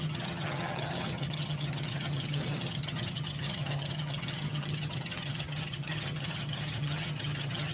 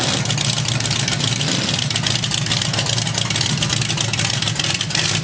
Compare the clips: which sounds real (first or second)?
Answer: second